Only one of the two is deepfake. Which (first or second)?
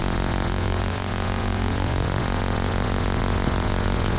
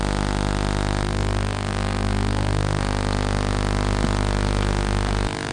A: first